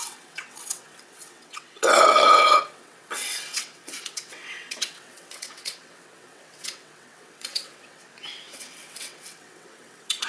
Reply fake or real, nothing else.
fake